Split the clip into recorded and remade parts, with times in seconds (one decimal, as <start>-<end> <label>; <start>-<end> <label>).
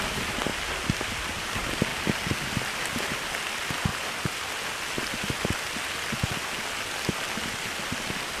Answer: 0.0-8.4 recorded